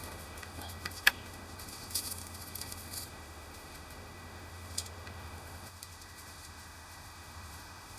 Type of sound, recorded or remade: remade